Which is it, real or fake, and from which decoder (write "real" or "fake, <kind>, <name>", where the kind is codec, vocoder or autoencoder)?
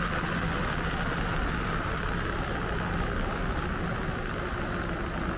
real